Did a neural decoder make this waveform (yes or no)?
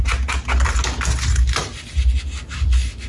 no